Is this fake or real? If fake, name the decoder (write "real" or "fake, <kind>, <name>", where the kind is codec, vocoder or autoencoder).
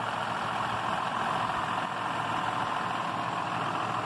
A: real